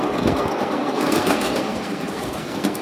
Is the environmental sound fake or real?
fake